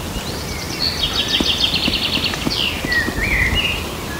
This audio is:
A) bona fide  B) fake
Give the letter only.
A